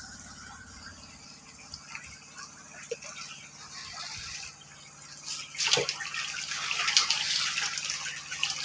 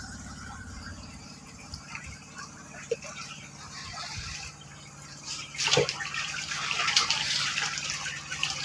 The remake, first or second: second